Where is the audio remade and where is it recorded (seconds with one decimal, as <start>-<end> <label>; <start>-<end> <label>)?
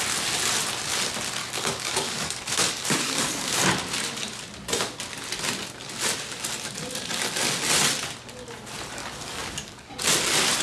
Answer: 0.0-1.4 recorded; 1.4-3.7 remade; 3.7-9.0 recorded; 9.0-9.9 remade; 9.9-10.6 recorded